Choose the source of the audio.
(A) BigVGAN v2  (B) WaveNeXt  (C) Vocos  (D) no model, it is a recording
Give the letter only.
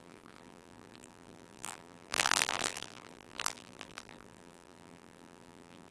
A